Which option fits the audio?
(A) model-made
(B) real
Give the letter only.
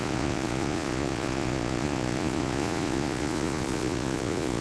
A